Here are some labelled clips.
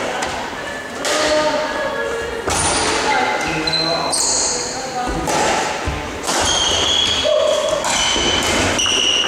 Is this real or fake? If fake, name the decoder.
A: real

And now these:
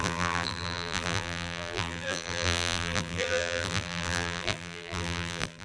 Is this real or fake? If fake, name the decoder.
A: fake, vocoder, BigVGAN v2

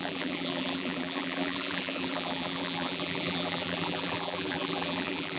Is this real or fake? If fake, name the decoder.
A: fake, vocoder, BigVGAN v2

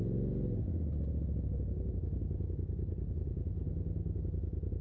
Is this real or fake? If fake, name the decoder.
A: real